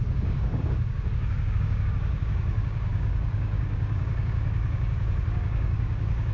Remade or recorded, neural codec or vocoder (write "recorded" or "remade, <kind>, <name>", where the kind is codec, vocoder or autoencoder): remade, codec, DAC